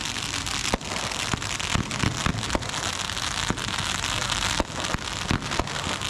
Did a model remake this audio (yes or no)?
no